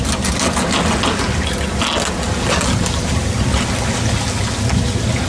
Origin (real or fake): real